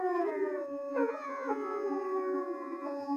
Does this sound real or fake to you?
fake